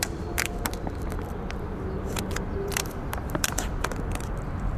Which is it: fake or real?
fake